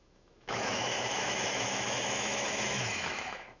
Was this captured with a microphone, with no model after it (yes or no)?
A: no